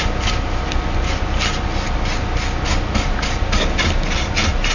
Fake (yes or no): no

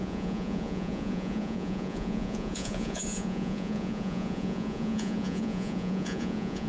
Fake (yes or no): yes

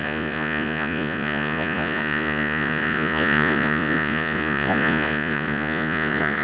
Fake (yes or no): yes